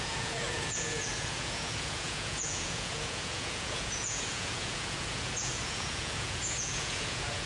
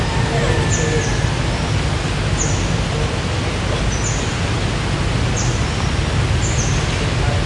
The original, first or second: second